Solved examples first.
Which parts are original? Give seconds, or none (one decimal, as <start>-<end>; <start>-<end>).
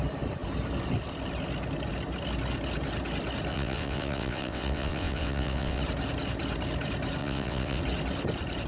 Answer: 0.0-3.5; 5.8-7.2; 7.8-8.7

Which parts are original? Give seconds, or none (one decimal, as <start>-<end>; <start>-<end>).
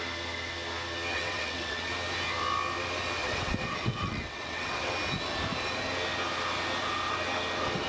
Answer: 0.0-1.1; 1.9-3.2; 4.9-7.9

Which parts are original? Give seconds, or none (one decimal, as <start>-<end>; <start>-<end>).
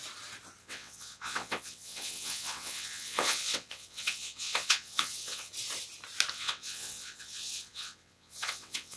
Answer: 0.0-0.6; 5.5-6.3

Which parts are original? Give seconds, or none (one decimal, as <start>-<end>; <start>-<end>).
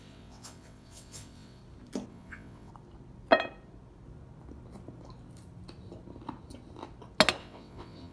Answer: 1.6-2.1; 2.7-7.4